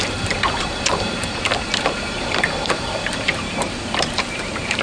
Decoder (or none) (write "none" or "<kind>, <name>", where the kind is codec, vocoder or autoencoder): vocoder, BigVGAN v2